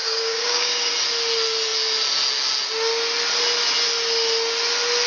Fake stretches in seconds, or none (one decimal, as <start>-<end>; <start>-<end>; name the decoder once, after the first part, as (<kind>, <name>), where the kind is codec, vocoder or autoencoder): 0.0-0.9 (codec, DAC)